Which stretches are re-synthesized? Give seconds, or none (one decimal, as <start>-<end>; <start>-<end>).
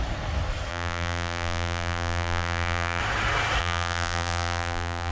0.7-3.0; 3.6-5.1